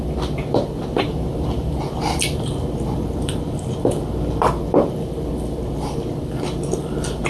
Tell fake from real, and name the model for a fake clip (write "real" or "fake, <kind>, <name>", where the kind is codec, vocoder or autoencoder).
fake, vocoder, BigVGAN v2